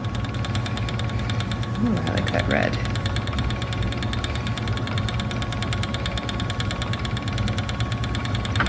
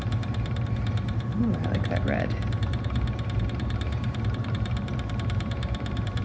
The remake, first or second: second